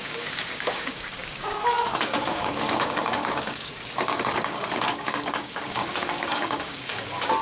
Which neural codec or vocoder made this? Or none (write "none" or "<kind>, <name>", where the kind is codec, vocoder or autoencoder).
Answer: codec, DAC